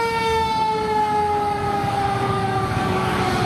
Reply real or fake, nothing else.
fake